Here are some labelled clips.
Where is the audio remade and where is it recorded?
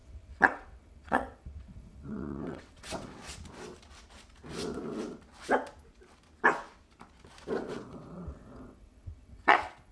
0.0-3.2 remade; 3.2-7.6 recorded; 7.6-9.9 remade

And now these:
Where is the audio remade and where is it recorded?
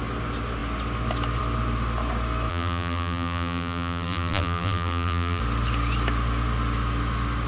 0.0-2.5 recorded; 2.5-5.4 remade; 5.4-7.5 recorded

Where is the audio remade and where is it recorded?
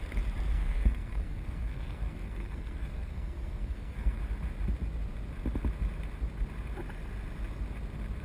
0.0-0.5 recorded; 0.5-4.2 remade; 4.2-8.2 recorded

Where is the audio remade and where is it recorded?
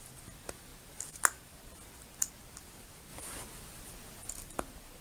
0.0-5.0 recorded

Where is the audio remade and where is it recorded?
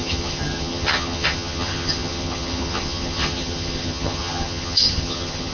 0.0-5.5 remade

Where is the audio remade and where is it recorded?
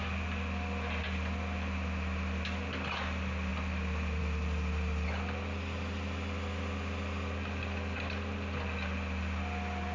0.0-9.9 recorded